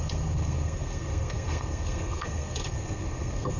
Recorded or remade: remade